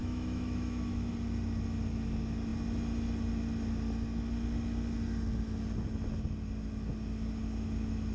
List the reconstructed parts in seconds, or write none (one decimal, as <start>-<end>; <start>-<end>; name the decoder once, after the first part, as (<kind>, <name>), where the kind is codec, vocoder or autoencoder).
0.0-1.1 (autoencoder, DAC-VAE)